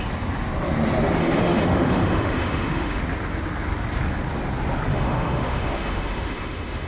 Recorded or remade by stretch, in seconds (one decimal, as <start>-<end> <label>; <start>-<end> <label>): 0.0-1.2 recorded; 1.2-3.0 remade; 3.0-4.9 recorded; 4.9-6.9 remade